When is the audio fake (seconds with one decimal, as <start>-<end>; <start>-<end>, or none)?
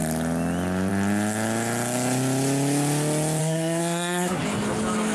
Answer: 3.4-4.4